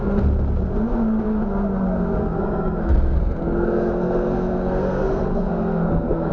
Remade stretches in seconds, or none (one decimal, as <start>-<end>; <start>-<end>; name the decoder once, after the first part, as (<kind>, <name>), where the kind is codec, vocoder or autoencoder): 2.2-6.3 (codec, SNAC)